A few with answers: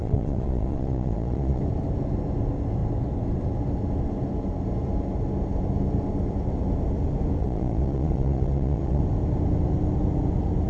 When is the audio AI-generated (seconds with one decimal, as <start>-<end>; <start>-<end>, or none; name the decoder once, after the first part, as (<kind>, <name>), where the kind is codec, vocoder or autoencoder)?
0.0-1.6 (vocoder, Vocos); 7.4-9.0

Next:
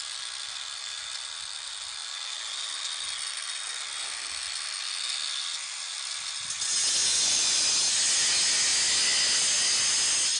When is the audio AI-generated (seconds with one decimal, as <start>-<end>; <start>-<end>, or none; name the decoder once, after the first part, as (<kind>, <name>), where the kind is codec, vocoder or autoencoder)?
7.0-7.6 (vocoder, Vocos)

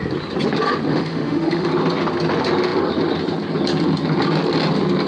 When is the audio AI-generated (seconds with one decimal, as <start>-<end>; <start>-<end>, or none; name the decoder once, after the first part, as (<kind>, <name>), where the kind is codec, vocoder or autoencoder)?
0.9-1.7 (autoencoder, DAC-VAE)

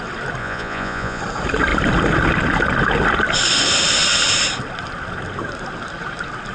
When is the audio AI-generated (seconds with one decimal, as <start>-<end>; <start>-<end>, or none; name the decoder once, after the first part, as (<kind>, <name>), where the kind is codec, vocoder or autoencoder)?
0.4-1.2 (vocoder, Vocos)

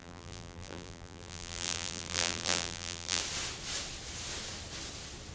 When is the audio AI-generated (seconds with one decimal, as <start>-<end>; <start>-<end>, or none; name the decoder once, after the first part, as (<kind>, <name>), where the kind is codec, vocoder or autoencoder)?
0.0-3.2 (vocoder, BigVGAN v2)

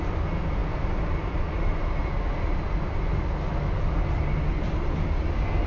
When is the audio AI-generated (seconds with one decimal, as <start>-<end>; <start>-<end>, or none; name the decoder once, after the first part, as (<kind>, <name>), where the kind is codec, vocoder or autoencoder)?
none

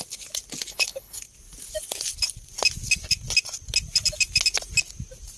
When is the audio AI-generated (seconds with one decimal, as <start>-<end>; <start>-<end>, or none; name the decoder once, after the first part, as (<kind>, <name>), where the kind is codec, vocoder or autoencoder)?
0.7-1.2 (codec, HILCodec)

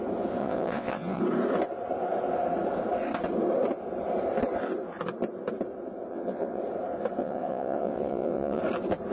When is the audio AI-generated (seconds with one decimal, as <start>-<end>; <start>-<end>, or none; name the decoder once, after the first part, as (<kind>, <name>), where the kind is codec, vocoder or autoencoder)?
0.4-1.2 (vocoder, WaveNeXt); 6.1-6.6; 7.2-8.6